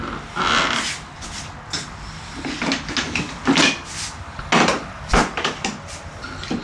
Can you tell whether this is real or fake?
real